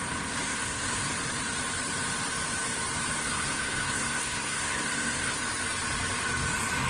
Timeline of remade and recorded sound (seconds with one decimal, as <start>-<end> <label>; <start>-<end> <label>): 0.0-0.5 recorded; 0.5-1.1 remade; 1.1-3.2 recorded; 3.2-5.4 remade; 5.4-6.9 recorded